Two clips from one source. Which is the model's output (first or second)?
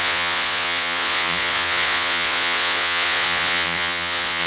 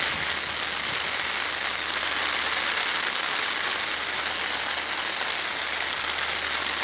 first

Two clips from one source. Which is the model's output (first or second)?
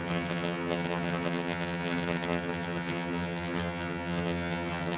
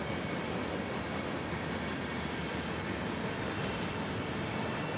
first